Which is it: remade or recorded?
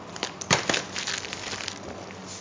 recorded